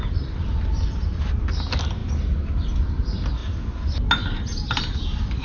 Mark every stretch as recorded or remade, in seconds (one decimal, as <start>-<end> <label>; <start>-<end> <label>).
0.0-5.4 recorded